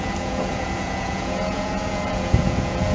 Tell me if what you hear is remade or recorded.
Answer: remade